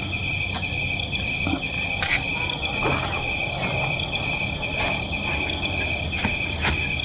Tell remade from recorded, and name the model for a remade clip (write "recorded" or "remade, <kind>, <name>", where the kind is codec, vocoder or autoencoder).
recorded